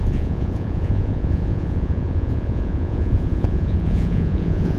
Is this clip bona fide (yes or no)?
no